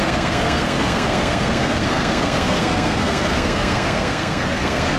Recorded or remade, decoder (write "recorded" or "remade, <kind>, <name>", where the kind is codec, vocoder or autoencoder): remade, codec, SNAC